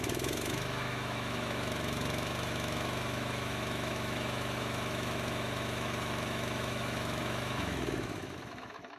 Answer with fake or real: fake